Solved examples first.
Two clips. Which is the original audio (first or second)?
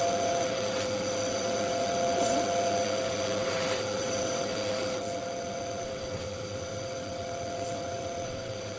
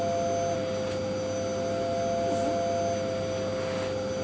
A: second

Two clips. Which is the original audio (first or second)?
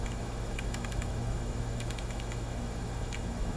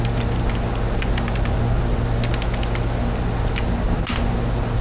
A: second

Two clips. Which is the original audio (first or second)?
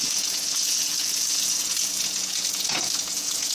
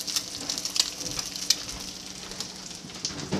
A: second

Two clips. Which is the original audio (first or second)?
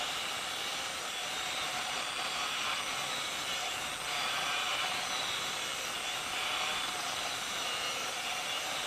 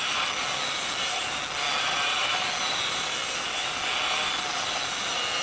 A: second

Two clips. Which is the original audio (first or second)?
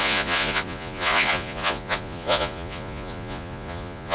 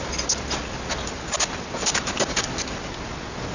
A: second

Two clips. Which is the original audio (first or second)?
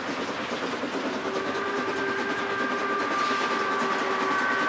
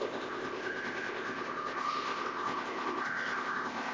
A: first